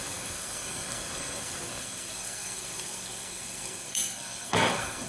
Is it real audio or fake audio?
fake